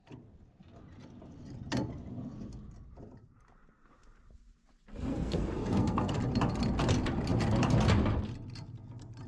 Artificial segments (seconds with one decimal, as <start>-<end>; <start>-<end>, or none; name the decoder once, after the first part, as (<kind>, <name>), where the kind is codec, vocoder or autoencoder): 5.1-6.2 (codec, SNAC)